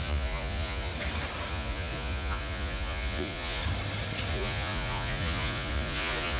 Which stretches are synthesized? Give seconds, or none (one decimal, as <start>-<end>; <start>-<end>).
0.0-0.9; 1.5-3.6; 4.3-6.4